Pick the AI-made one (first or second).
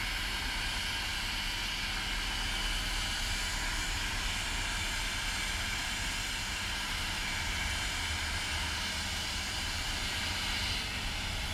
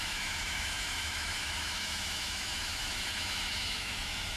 second